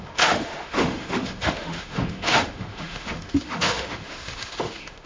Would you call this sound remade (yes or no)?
yes